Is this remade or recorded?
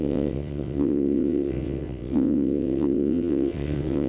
remade